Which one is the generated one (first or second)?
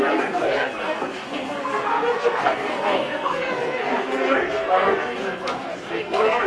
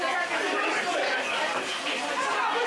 first